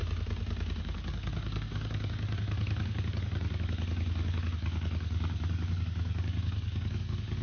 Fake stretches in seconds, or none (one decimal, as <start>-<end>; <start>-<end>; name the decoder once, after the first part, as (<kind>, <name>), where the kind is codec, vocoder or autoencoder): 0.8-7.4 (codec, DAC)